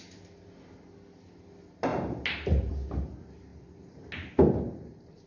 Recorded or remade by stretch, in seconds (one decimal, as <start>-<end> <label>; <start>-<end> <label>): 0.0-5.3 recorded